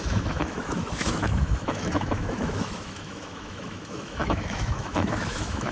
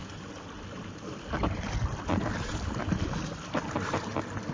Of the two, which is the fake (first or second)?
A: first